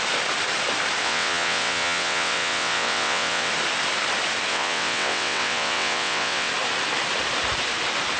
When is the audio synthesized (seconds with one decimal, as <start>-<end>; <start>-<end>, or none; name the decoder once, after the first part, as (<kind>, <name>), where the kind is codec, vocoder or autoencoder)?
1.0-3.5 (vocoder, WaveNeXt); 4.5-6.5